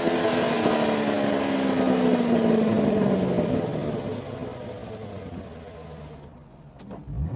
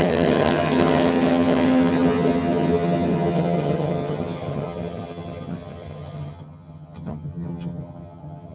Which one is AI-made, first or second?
second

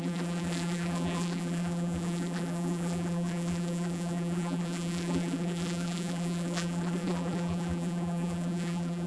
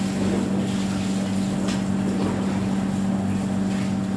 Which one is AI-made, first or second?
first